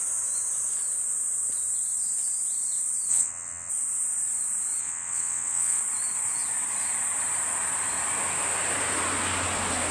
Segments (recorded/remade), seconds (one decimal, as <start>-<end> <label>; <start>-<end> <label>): 0.0-3.1 recorded; 3.1-3.7 remade; 3.7-4.8 recorded; 4.8-5.8 remade; 5.8-9.9 recorded